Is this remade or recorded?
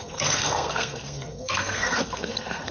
remade